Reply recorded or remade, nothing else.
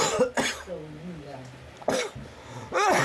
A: recorded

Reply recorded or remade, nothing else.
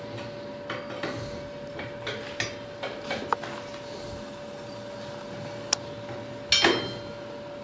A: recorded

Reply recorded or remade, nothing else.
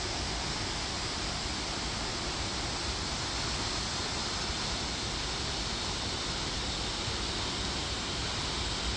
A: recorded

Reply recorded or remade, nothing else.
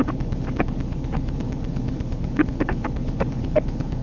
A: remade